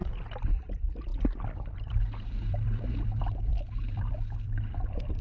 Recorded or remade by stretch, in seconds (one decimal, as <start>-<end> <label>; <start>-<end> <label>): 0.0-5.2 remade